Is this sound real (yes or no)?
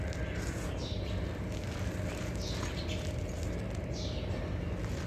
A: yes